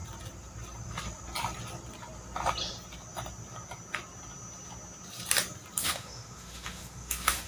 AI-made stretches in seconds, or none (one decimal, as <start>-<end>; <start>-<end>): 5.8-7.5